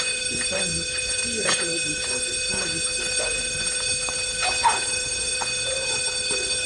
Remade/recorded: remade